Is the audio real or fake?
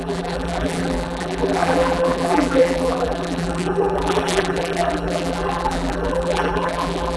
fake